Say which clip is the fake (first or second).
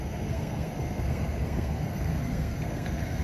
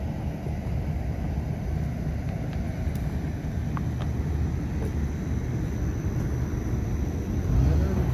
first